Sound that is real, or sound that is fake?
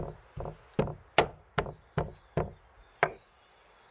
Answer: real